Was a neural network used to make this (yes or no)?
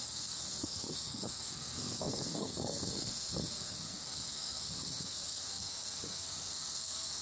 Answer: yes